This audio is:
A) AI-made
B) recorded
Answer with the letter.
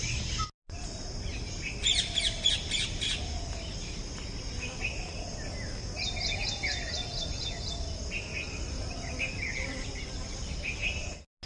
B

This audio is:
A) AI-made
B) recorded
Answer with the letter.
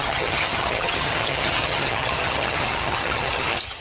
A